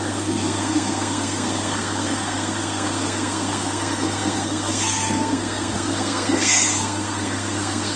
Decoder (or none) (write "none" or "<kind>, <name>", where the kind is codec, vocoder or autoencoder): codec, SNAC